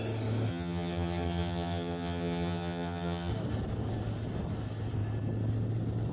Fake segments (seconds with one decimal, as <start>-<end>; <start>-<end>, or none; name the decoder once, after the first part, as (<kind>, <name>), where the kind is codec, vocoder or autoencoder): 0.5-3.3 (vocoder, HiFi-GAN)